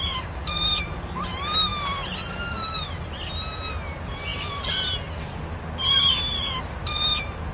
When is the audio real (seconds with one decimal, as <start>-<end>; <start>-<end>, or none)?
0.0-7.5